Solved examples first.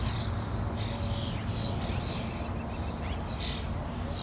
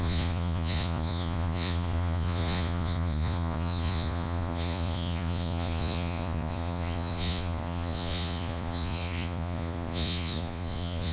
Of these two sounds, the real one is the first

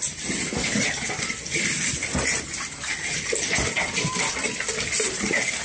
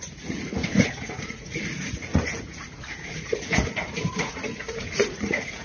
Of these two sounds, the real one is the first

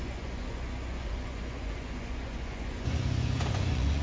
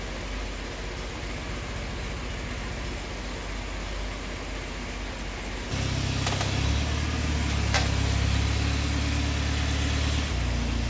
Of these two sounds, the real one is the second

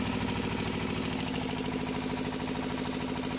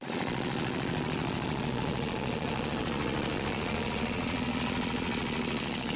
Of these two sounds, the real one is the first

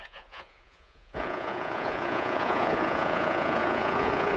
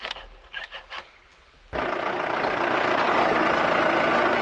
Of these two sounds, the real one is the second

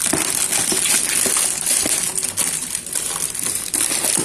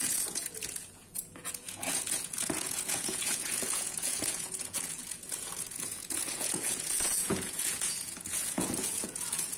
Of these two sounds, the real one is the first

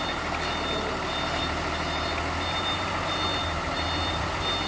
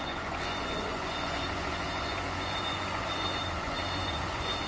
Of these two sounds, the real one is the first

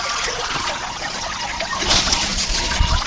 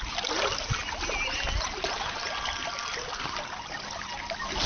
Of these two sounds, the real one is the second